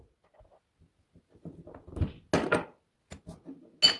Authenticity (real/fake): real